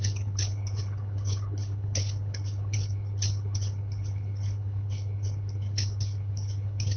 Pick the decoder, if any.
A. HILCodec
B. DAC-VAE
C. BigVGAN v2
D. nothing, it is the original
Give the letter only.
A